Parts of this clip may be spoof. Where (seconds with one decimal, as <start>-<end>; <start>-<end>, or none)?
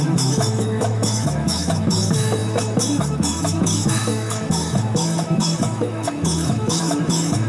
0.0-7.5